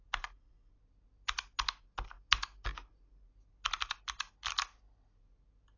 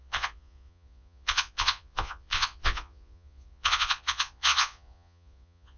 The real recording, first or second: first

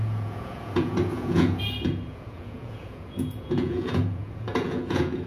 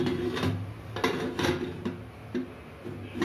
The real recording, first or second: second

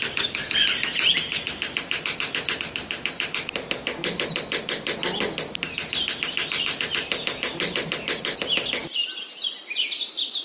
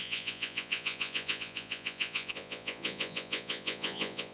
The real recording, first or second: first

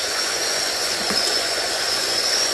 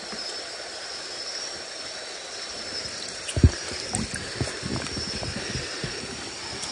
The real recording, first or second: second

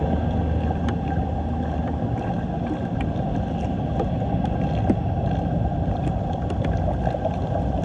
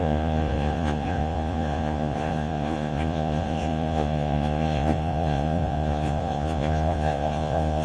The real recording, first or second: first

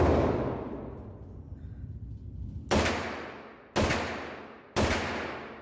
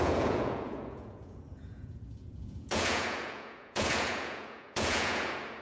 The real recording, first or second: first